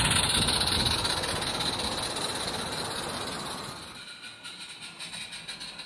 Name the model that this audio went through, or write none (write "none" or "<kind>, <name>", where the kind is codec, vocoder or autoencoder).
none